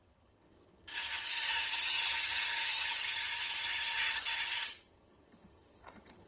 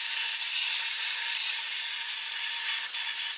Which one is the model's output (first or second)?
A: first